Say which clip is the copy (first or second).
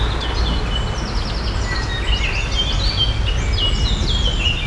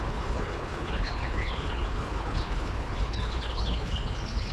second